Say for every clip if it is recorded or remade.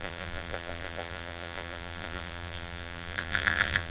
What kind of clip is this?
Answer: remade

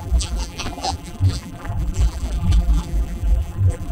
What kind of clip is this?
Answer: remade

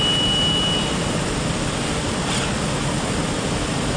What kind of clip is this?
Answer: recorded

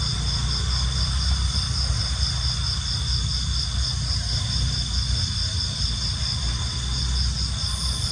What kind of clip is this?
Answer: recorded